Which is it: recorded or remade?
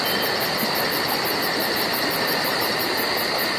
recorded